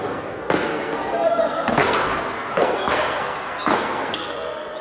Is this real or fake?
fake